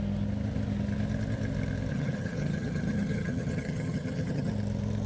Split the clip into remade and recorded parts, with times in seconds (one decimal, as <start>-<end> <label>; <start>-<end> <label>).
0.0-1.9 recorded; 1.9-4.5 remade; 4.5-5.1 recorded